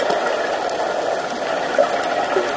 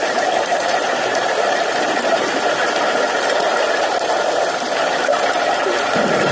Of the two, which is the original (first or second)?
first